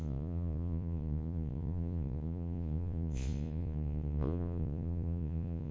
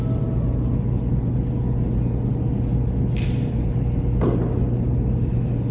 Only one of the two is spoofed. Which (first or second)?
first